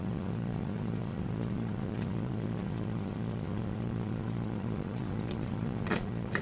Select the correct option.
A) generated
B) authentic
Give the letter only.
A